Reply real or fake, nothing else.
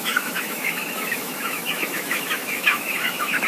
fake